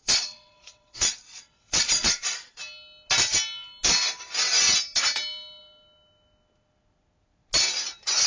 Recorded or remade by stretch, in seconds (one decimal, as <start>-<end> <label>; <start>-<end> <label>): 0.0-2.6 remade; 2.6-8.3 recorded